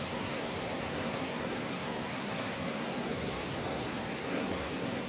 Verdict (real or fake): fake